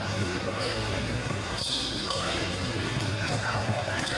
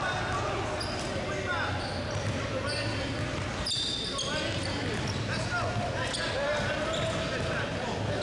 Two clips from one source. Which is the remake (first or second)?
first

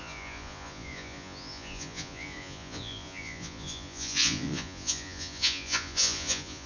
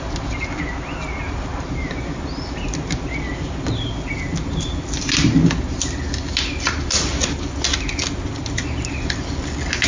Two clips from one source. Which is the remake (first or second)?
first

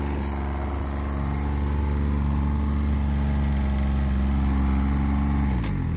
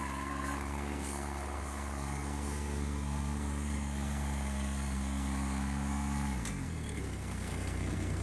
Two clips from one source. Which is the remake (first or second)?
second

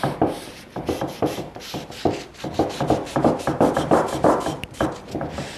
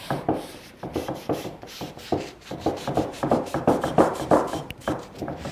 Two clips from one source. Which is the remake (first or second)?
second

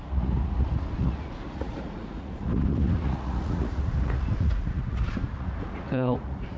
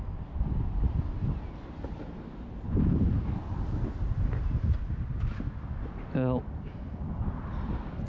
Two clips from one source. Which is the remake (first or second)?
first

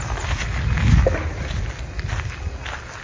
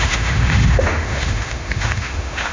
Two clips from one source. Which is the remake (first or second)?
second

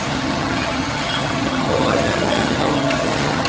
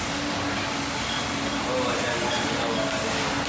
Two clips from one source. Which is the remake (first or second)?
first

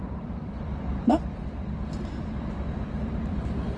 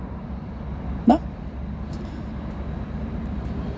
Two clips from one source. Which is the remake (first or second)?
first